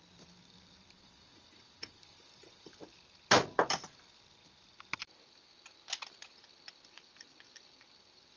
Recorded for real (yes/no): yes